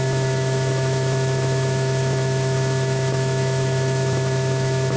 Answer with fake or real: fake